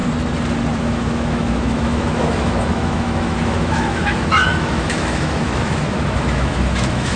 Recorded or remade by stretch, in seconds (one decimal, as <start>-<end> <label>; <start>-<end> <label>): 0.0-0.8 recorded; 0.8-7.2 remade